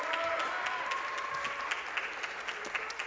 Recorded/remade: recorded